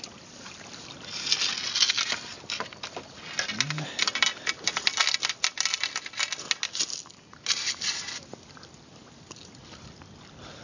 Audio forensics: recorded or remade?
recorded